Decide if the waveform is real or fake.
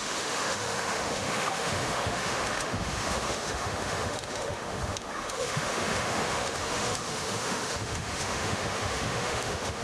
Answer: fake